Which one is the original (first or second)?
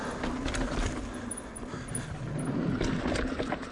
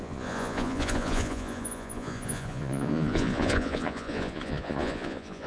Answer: first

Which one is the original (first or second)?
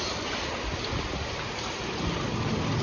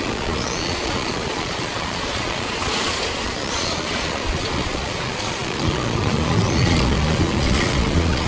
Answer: first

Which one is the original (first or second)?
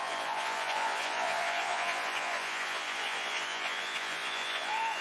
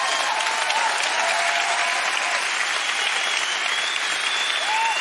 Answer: second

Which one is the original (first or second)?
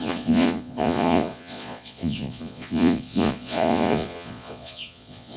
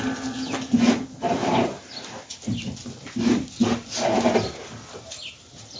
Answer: second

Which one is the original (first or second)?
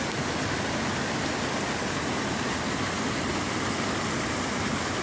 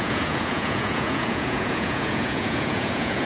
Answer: first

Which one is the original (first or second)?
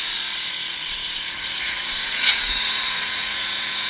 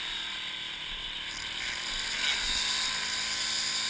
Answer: second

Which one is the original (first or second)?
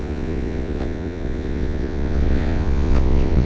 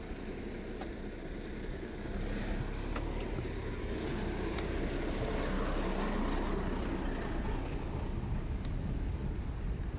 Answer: second